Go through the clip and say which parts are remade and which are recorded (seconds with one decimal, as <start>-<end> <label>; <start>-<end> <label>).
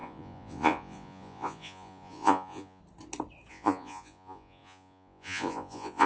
0.0-2.8 remade; 2.8-3.5 recorded; 3.5-6.1 remade